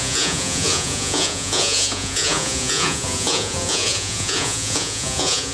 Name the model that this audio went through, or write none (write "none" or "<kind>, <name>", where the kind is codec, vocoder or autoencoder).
vocoder, Vocos